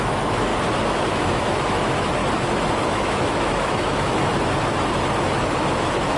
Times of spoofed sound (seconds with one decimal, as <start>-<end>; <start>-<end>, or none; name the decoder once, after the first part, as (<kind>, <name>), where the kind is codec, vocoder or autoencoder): 0.0-0.5 (autoencoder, DAC-VAE); 1.1-2.2; 2.8-4.3; 5.5-6.2